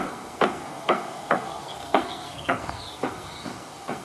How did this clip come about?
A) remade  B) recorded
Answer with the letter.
A